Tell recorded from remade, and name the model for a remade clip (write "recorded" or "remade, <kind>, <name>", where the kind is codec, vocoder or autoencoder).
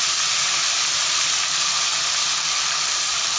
recorded